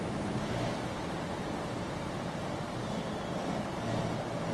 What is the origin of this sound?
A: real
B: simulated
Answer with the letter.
A